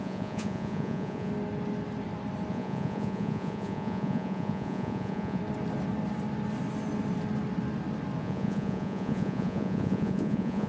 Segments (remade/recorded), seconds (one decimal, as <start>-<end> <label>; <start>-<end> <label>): 0.0-1.3 remade; 1.3-2.5 recorded; 2.5-5.4 remade; 5.4-8.2 recorded; 8.2-10.7 remade